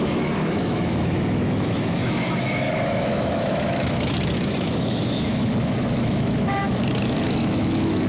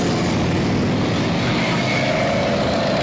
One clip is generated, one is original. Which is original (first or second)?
second